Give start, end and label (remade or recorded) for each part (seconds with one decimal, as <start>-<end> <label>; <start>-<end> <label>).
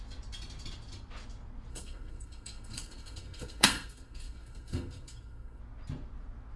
0.0-1.7 recorded; 1.7-5.6 remade; 5.6-6.6 recorded